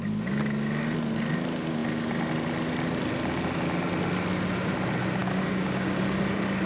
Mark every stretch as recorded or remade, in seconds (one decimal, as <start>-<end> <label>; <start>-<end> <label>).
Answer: 0.0-5.2 recorded; 5.2-6.0 remade; 6.0-6.7 recorded